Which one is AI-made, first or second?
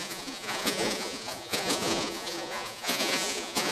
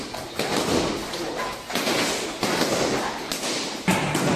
first